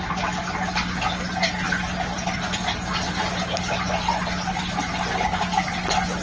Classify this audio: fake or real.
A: real